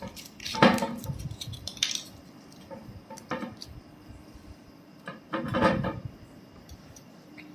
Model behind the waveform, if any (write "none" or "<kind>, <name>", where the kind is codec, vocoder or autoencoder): vocoder, BigVGAN v2